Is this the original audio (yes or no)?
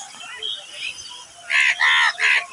yes